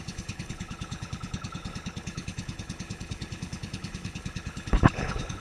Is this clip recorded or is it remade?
remade